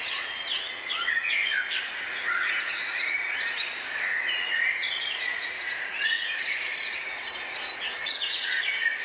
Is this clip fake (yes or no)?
yes